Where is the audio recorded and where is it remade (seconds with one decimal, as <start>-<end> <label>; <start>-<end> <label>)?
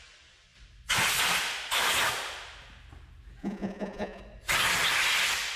0.0-3.4 recorded; 3.4-4.2 remade; 4.2-5.6 recorded